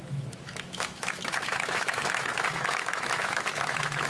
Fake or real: fake